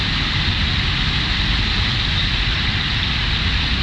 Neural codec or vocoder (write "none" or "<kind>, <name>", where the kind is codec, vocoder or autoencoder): none